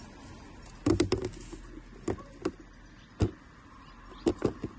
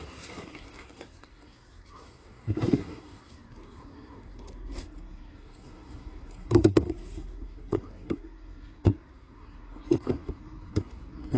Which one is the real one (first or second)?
first